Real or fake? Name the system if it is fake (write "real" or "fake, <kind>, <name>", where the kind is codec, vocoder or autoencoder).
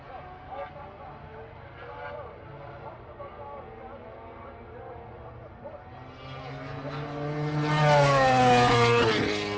real